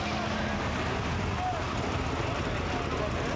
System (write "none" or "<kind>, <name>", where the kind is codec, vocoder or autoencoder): none